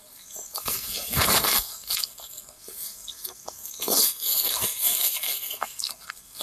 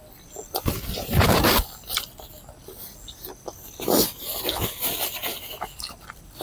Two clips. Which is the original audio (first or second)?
second